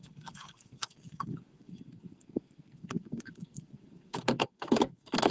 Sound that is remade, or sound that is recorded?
remade